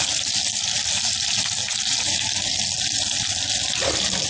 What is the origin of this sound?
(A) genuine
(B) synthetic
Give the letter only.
A